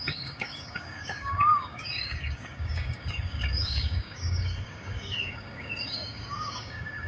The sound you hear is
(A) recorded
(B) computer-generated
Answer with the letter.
B